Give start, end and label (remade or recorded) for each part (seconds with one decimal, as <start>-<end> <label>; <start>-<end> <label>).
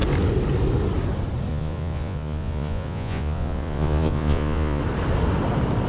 0.0-1.5 recorded; 1.5-4.8 remade; 4.8-5.9 recorded